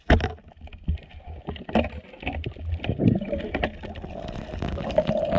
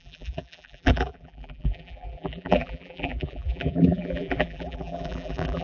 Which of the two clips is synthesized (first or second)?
second